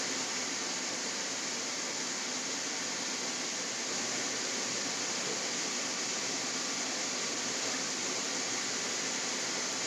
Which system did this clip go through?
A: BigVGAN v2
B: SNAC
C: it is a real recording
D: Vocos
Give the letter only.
C